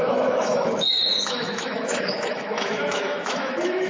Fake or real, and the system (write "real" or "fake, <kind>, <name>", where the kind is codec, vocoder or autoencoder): fake, autoencoder, DAC-VAE